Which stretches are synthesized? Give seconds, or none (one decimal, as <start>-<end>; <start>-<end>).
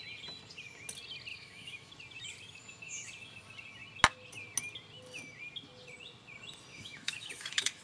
1.3-1.9; 2.6-3.1; 6.7-7.8